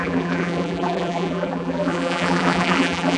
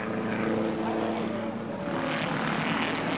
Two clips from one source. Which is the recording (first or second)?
second